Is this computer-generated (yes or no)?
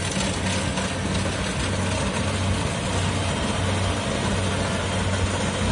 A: no